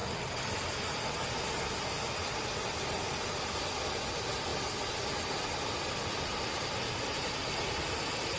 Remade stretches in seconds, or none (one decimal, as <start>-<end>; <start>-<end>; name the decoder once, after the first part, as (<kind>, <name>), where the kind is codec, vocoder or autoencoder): 7.4-8.4 (vocoder, BigVGAN v2)